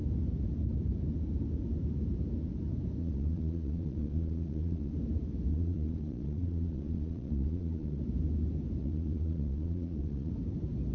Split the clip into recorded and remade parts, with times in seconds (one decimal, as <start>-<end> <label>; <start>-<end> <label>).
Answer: 0.0-3.0 recorded; 3.0-4.9 remade; 4.9-5.5 recorded; 5.5-8.0 remade; 8.0-8.8 recorded; 8.8-10.3 remade; 10.3-10.9 recorded